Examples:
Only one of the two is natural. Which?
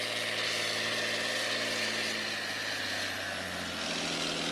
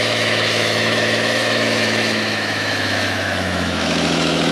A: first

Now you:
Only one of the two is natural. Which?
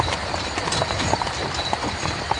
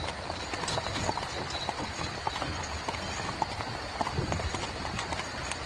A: second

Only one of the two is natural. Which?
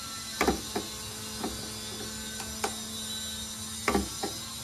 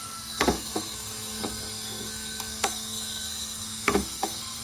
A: first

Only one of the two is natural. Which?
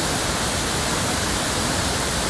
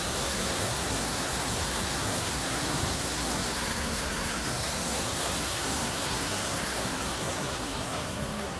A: first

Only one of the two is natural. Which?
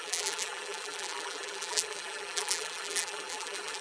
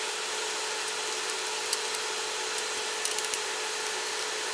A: second